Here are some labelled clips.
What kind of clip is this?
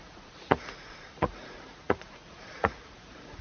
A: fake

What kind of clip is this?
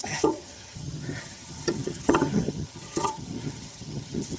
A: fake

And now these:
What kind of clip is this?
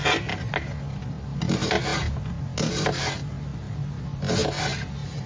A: real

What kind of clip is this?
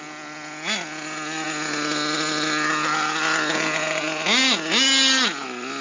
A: real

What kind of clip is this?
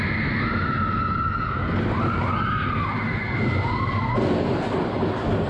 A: real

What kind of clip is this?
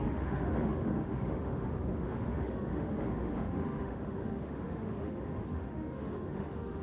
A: fake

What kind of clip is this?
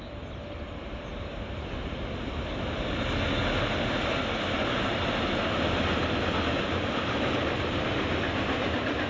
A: real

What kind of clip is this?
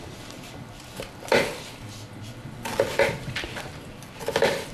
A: fake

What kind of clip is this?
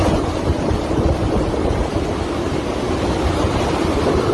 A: real